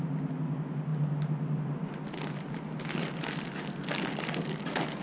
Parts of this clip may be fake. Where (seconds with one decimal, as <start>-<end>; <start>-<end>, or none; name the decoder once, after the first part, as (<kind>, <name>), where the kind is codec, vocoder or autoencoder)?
none